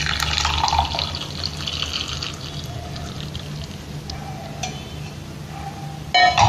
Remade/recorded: recorded